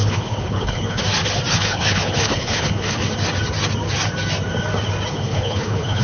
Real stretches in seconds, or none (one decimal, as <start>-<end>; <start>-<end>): 1.0-1.5; 3.0-5.1

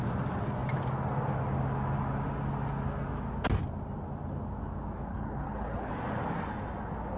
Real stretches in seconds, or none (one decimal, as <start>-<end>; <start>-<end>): 0.0-5.1; 5.9-7.2